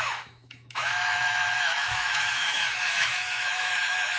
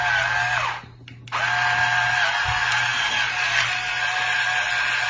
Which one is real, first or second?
second